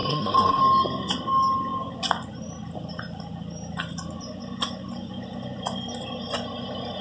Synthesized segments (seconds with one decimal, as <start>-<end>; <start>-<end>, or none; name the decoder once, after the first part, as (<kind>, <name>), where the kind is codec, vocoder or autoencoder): 0.0-0.6 (codec, SNAC)